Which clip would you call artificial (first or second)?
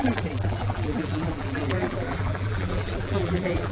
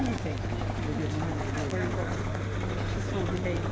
first